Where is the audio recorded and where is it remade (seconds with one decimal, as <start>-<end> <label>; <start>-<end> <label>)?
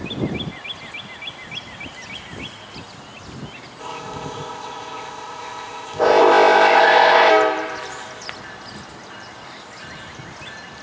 0.0-3.8 recorded; 3.8-7.3 remade; 7.3-10.8 recorded